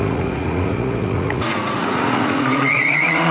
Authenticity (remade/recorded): remade